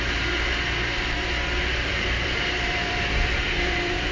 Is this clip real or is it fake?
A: fake